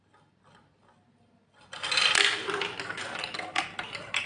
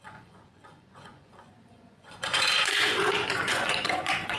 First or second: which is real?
first